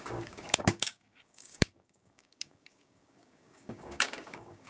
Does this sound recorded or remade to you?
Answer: remade